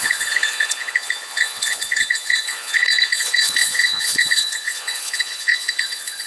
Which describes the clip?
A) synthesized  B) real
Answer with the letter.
A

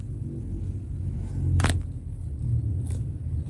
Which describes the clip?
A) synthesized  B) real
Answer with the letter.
B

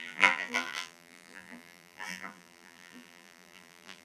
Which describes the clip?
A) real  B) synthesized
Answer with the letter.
B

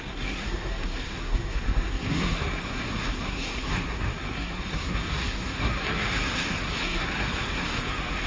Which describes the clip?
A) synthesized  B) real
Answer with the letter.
A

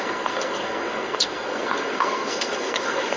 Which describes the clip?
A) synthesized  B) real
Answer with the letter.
A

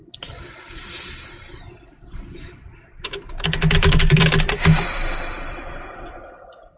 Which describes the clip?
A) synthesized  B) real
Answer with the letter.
A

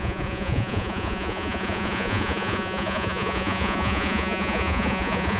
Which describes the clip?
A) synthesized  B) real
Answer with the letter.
A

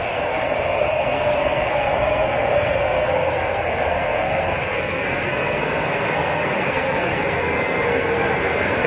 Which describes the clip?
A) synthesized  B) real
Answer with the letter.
A